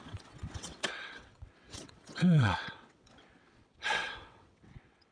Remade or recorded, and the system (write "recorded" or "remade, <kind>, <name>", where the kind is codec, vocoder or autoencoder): remade, vocoder, WaveNeXt